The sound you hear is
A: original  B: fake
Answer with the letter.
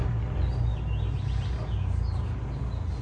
A